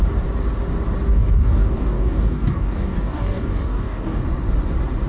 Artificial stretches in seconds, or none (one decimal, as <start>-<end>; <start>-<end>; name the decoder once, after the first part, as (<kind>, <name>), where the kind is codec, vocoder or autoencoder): 1.1-4.2 (codec, DAC)